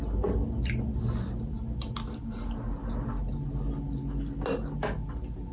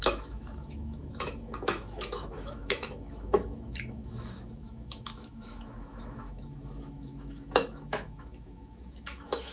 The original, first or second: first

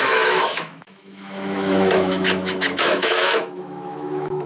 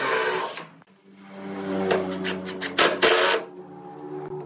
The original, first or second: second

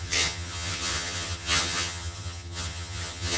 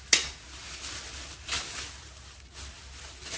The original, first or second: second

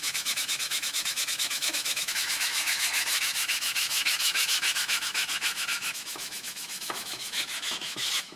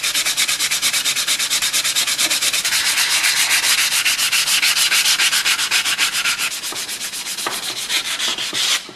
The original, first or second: second